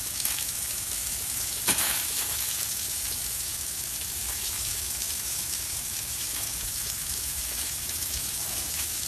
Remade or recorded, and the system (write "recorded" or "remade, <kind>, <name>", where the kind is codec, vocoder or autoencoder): remade, autoencoder, DAC-VAE